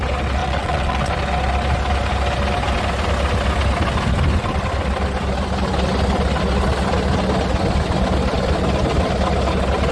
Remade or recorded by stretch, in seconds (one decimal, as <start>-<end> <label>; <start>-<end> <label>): 0.0-0.4 recorded; 0.4-1.1 remade; 1.1-9.9 recorded